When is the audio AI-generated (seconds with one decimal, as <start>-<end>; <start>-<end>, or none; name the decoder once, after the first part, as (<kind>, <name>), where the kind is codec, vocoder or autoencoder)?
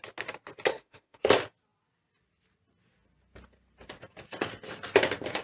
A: 0.7-1.2 (autoencoder, DAC-VAE)